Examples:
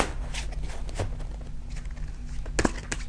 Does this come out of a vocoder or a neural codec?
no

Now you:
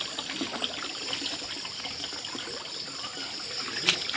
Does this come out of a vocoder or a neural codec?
no